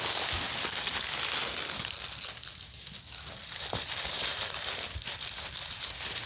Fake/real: real